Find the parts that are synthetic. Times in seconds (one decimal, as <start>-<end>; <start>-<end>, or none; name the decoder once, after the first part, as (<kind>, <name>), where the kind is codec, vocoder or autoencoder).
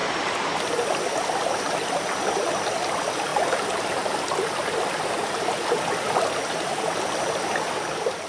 none